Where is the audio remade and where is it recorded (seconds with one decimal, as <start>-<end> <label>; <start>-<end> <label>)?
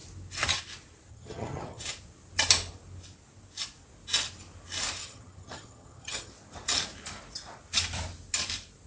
0.0-1.1 recorded; 1.1-1.8 remade; 1.8-5.0 recorded; 5.0-6.3 remade; 6.3-8.9 recorded